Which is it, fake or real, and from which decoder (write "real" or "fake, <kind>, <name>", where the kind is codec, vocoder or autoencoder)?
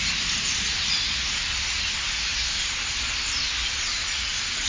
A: real